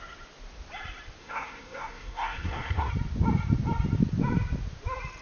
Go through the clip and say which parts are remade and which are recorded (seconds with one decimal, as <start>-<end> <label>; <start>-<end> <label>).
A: 0.0-1.2 recorded; 1.2-2.9 remade; 2.9-5.2 recorded